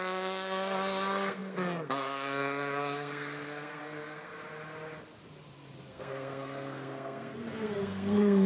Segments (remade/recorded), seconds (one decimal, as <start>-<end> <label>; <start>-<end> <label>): 0.0-4.3 remade; 4.3-5.9 recorded; 5.9-8.5 remade